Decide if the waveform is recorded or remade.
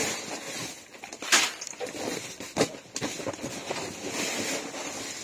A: recorded